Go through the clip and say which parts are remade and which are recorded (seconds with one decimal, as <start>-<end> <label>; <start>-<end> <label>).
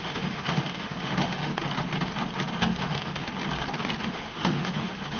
0.0-1.5 remade; 1.5-2.6 recorded; 2.6-3.3 remade; 3.3-4.0 recorded; 4.0-5.2 remade